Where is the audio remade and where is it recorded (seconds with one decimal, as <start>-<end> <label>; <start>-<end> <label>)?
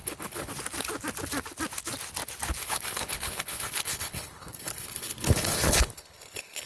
0.0-0.5 remade; 0.5-2.6 recorded; 2.6-6.7 remade